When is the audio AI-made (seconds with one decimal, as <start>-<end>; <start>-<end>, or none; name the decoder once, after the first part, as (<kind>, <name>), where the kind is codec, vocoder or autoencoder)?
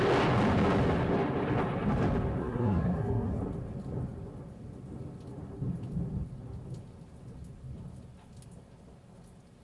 2.4-3.4 (codec, SNAC)